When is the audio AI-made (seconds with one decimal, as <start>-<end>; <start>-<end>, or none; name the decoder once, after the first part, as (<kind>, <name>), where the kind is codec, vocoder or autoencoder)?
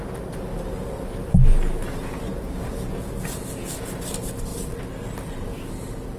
0.0-1.1 (vocoder, BigVGAN v2); 2.3-2.9; 4.5-6.2